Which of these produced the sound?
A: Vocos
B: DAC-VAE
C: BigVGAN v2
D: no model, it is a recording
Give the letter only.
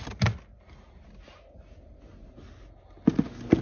D